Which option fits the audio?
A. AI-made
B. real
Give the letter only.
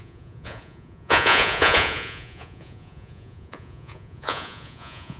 A